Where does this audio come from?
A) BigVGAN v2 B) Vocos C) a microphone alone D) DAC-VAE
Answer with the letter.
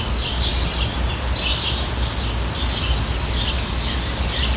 C